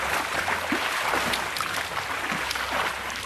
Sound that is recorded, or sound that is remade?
recorded